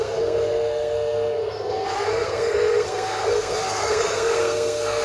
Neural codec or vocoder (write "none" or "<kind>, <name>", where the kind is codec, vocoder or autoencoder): codec, SNAC